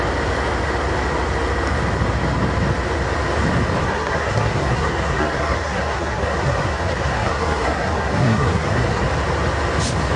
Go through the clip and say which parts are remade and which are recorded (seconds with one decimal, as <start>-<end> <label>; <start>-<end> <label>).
0.0-3.8 recorded; 3.8-9.0 remade; 9.0-10.2 recorded